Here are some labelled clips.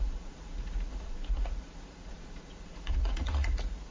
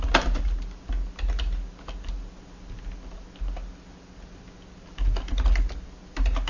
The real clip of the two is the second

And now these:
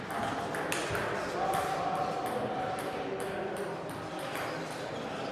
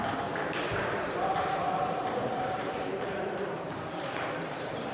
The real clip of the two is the first